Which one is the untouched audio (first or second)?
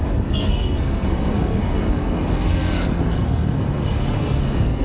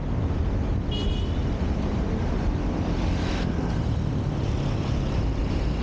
second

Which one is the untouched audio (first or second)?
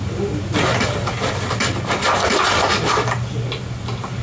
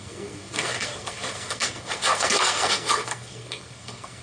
first